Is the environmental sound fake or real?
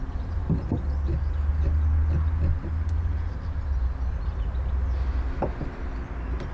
real